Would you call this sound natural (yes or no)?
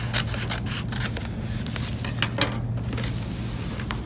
yes